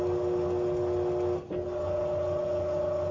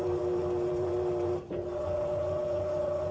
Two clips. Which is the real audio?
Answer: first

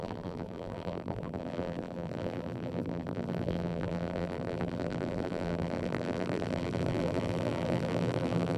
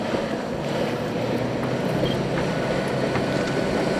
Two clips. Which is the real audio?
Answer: second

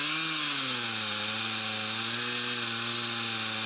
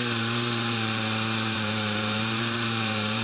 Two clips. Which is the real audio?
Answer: first